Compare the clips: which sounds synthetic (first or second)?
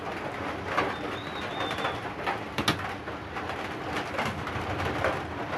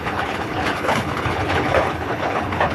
second